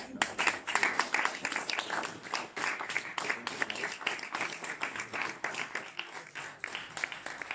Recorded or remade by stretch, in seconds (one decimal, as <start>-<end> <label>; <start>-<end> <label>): 0.0-7.5 recorded